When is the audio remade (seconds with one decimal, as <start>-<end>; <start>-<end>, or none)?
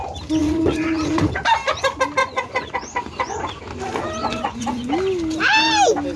0.4-1.3; 2.2-3.6; 4.2-4.9